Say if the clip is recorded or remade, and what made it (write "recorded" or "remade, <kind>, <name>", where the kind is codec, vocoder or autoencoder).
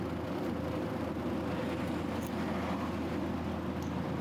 recorded